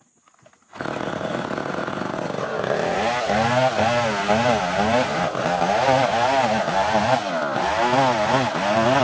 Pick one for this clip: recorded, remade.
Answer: recorded